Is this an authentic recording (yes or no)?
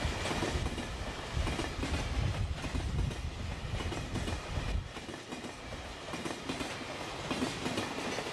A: yes